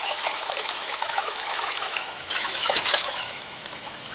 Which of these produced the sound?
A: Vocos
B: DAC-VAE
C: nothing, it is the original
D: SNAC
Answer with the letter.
B